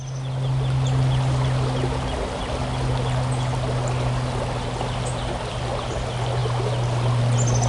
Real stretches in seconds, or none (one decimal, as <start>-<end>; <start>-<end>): 0.0-7.7